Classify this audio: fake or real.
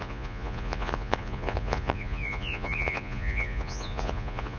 fake